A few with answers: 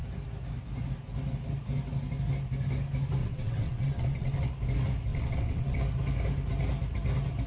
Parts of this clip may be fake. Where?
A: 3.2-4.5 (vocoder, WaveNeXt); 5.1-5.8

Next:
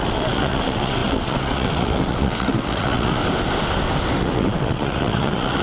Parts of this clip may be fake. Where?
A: 0.0-3.2 (vocoder, WaveNeXt); 4.2-5.6

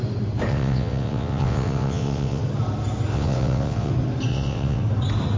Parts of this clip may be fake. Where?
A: 0.5-2.4 (vocoder, WaveNeXt); 3.1-3.9; 4.3-4.8

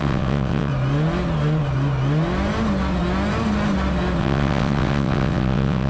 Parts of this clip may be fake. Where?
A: 0.0-0.7 (vocoder, WaveNeXt); 4.2-5.9